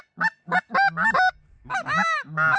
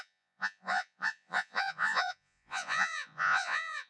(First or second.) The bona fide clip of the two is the first